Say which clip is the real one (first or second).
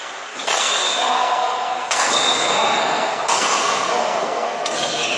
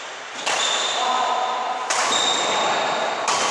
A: second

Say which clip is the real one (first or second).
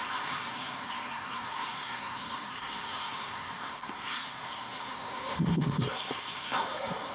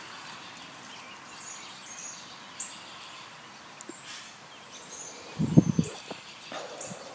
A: second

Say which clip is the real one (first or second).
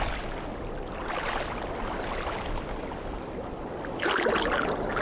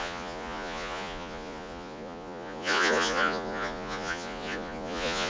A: first